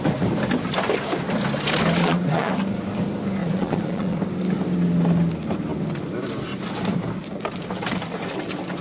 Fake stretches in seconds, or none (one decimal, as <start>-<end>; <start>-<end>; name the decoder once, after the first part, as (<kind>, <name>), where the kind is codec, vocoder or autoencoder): 2.0-2.5 (vocoder, Vocos); 3.4-4.2